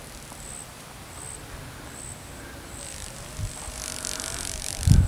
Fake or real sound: real